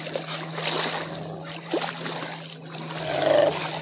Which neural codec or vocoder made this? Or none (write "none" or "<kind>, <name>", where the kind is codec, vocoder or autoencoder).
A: none